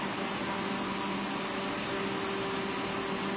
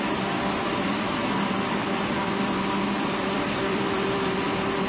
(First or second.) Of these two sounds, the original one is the first